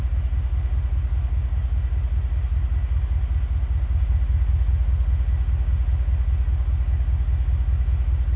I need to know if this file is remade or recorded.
recorded